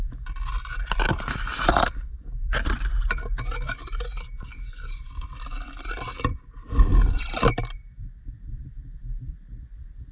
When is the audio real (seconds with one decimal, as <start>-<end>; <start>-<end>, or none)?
0.0-6.3; 9.7-10.1